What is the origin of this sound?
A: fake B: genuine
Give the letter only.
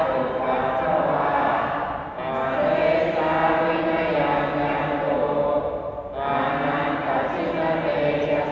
B